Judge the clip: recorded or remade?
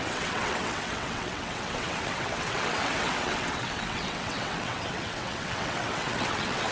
remade